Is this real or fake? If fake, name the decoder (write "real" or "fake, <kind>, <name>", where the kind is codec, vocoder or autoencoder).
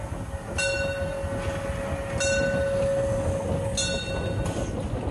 real